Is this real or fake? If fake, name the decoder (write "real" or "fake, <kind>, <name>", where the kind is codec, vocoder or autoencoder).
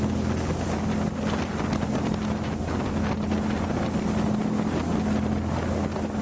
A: real